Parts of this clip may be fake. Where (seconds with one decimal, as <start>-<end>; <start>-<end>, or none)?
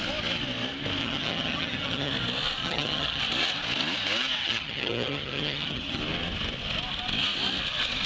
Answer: 1.0-2.1; 2.6-3.2; 4.4-6.0